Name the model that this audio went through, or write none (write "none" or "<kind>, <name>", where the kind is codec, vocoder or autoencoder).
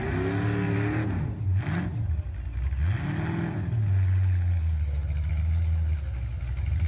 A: none